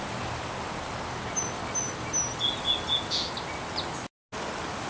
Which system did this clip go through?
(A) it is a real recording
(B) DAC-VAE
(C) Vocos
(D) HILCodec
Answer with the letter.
A